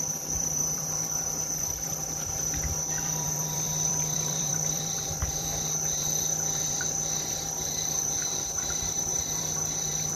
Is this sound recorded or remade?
remade